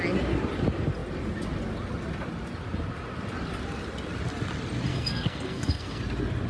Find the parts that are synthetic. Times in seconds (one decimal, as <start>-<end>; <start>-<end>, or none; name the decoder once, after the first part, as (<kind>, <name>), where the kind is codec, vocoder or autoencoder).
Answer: 4.9-6.0 (codec, SNAC)

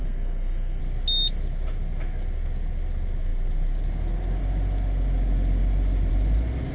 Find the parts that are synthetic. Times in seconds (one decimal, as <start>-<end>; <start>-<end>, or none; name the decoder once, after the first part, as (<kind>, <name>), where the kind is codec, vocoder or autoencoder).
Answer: 0.0-0.8 (codec, SNAC)

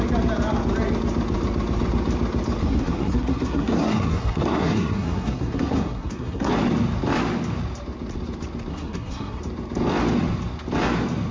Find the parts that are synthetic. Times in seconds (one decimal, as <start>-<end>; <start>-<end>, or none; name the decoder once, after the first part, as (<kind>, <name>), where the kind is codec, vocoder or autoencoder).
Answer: 2.6-6.5 (codec, SNAC); 8.7-9.4

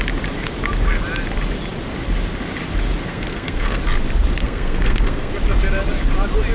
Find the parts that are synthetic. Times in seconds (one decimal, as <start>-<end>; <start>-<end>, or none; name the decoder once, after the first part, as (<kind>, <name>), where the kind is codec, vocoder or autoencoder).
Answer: 3.1-3.8 (codec, SNAC); 4.4-5.3